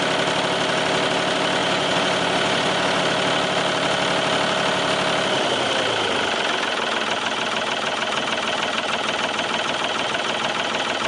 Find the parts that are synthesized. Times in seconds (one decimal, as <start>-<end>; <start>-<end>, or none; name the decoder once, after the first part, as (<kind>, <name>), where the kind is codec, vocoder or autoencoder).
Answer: 1.6-3.0 (vocoder, Vocos)